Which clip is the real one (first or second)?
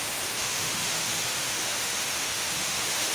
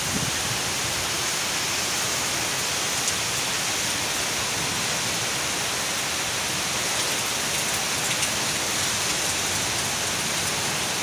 second